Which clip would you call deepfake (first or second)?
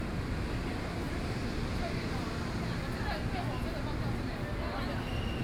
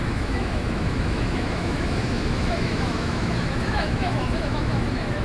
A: second